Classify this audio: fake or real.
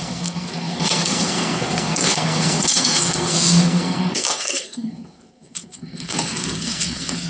fake